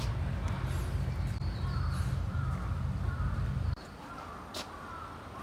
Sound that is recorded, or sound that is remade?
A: recorded